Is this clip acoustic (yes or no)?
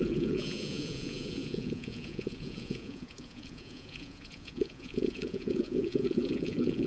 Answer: no